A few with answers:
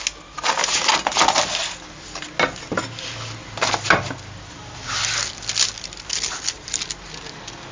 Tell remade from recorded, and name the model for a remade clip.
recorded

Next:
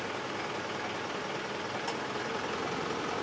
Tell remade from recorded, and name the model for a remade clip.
recorded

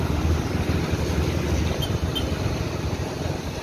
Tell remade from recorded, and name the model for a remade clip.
recorded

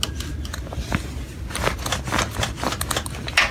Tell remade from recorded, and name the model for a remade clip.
recorded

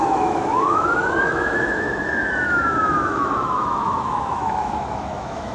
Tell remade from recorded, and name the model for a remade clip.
remade, autoencoder, DAC-VAE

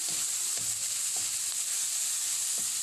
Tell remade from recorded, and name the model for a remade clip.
recorded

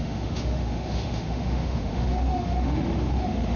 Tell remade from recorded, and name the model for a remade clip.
remade, autoencoder, DAC-VAE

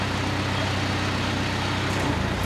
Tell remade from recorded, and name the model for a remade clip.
recorded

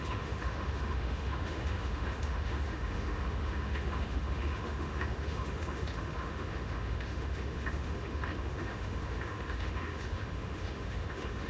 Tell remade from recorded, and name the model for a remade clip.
remade, autoencoder, DAC-VAE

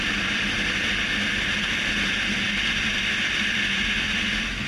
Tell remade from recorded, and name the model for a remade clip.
recorded